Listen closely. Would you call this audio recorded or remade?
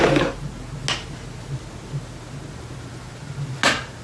recorded